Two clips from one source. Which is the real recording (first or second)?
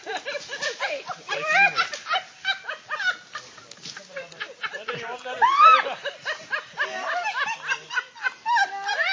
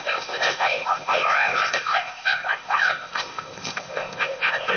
first